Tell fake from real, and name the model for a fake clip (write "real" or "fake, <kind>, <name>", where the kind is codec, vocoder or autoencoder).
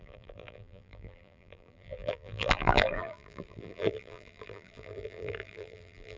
fake, vocoder, BigVGAN v2